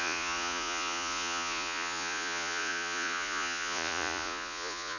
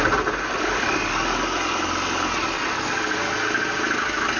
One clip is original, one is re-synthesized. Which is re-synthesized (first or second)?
first